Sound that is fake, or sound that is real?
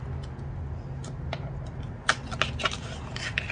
real